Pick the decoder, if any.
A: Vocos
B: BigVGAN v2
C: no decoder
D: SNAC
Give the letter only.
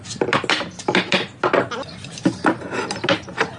C